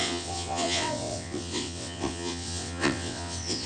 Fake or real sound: fake